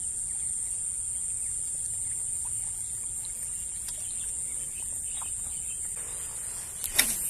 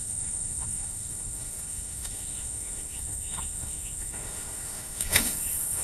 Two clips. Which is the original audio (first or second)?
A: first